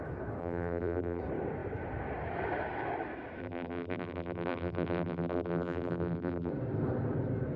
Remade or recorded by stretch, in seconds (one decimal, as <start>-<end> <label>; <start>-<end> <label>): 0.0-0.4 recorded; 0.4-1.2 remade; 1.2-3.4 recorded; 3.4-6.5 remade; 6.5-7.6 recorded